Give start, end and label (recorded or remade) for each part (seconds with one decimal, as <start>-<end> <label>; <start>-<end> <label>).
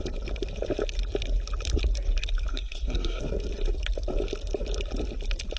0.0-2.5 recorded; 2.5-3.2 remade; 3.2-5.6 recorded